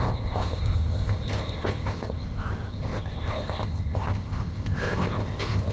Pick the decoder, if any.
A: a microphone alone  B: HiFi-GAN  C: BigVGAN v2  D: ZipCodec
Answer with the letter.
D